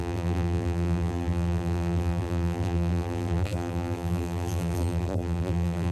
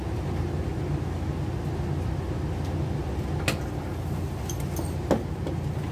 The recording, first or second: second